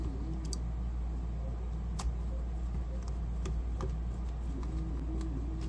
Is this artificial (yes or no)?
no